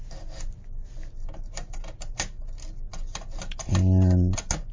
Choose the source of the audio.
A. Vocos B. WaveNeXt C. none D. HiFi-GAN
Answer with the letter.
C